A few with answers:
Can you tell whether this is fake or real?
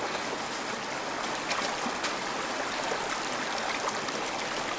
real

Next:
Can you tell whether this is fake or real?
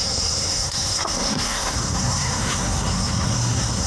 fake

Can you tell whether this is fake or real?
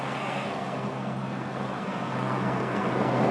fake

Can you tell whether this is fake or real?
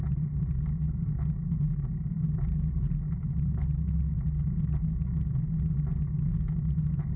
real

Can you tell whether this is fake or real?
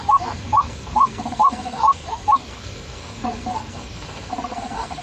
fake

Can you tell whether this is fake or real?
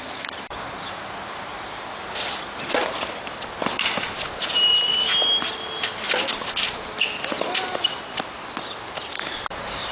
real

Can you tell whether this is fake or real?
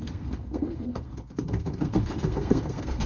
fake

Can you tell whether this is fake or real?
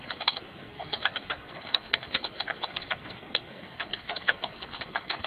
fake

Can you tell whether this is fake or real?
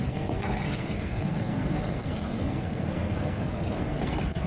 fake